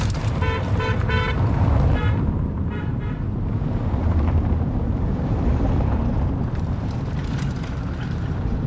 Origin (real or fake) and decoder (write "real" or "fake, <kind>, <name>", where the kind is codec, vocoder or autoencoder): fake, vocoder, BigVGAN v2